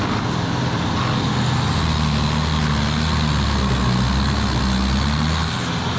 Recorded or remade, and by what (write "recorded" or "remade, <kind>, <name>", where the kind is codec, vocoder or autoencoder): recorded